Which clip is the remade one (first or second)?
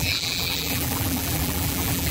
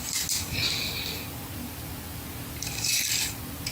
first